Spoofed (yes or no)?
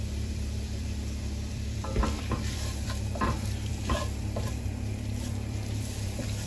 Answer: yes